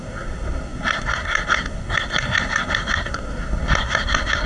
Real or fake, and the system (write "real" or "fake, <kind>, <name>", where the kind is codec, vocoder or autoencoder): fake, codec, SNAC